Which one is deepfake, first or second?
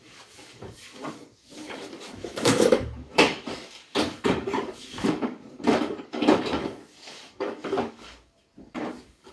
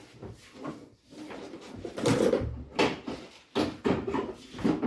first